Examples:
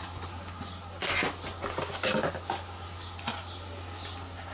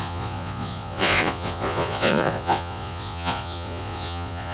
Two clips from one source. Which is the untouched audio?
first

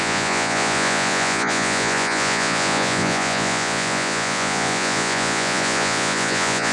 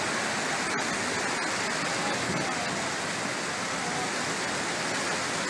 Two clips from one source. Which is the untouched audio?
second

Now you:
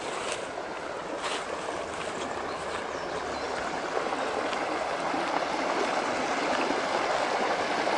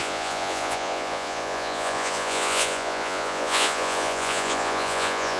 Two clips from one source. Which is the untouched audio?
first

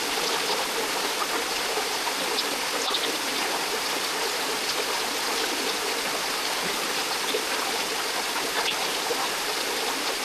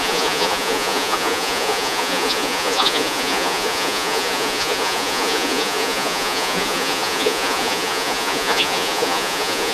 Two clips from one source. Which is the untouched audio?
first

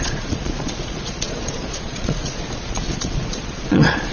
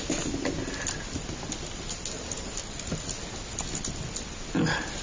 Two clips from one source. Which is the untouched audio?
second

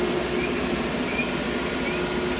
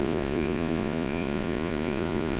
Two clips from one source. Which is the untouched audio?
first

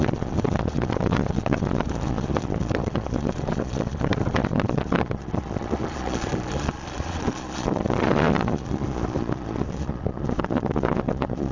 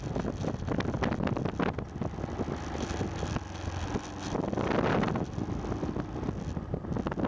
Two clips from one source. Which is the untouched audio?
second